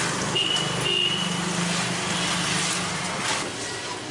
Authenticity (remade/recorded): recorded